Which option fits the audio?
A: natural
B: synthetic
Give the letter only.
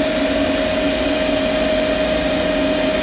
A